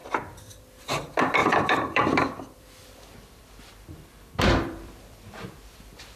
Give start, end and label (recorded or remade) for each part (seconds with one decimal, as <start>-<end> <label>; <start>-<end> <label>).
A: 0.0-0.9 recorded; 0.9-6.2 remade